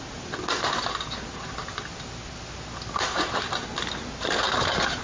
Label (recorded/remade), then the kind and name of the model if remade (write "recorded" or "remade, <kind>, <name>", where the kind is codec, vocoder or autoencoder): recorded